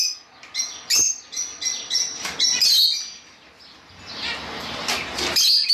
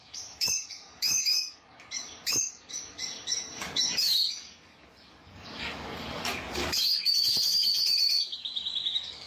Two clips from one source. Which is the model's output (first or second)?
second